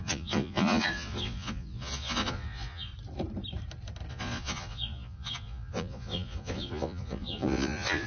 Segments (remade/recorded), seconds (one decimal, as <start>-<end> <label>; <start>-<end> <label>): 0.0-2.9 remade; 2.9-4.1 recorded; 4.1-8.1 remade